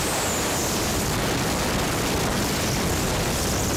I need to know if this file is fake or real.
real